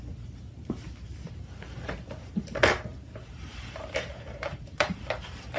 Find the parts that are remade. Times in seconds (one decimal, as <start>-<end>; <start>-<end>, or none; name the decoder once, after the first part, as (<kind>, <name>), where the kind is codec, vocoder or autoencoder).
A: 2.9-5.6 (vocoder, BigVGAN v2)